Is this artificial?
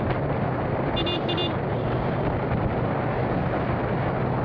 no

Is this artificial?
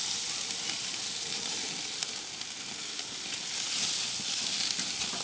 no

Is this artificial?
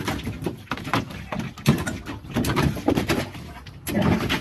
no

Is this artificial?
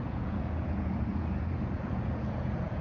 yes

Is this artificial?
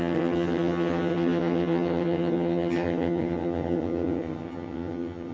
yes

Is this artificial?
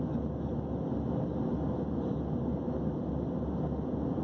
no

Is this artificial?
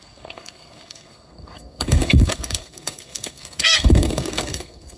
yes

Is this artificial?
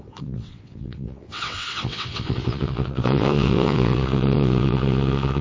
yes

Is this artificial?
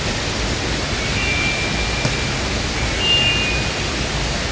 no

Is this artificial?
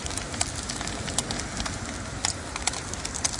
no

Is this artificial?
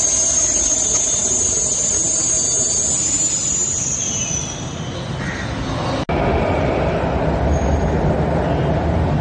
no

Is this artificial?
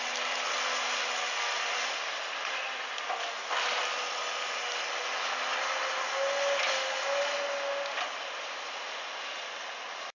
no